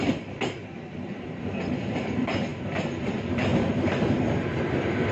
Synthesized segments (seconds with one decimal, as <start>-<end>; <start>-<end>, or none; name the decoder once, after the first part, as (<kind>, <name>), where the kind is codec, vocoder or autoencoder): 0.0-5.1 (vocoder, BigVGAN v2)